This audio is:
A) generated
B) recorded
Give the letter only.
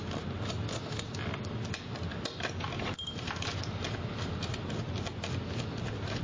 B